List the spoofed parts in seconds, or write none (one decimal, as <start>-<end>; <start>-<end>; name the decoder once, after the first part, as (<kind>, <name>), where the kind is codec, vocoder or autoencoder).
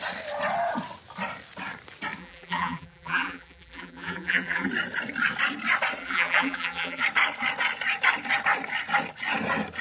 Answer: 2.2-4.7 (vocoder, BigVGAN v2); 6.0-7.0